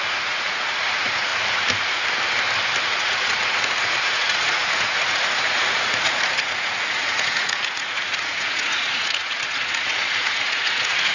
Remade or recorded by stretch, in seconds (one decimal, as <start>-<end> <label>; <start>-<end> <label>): 0.0-1.3 remade; 1.3-2.8 recorded; 2.8-11.1 remade